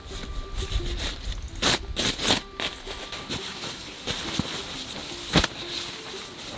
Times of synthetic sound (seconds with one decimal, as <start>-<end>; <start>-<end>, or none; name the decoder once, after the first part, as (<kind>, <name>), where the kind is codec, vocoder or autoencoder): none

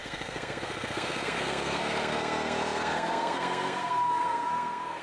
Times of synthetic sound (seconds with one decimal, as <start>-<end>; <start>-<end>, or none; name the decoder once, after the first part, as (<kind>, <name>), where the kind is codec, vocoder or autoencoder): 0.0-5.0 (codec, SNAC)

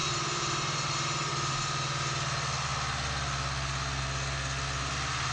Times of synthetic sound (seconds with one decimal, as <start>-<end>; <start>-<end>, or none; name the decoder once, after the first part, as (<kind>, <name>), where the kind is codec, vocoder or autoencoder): 0.0-1.3 (vocoder, BigVGAN v2)

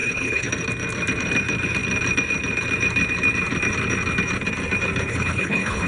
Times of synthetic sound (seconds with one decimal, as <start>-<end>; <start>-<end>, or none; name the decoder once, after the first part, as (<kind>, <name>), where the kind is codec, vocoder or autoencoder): 0.0-0.5 (codec, HILCodec); 5.1-5.9

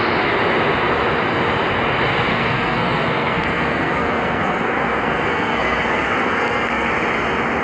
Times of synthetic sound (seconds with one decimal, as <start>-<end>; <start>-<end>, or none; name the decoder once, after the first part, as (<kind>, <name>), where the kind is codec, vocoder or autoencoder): 2.3-6.9 (codec, SNAC)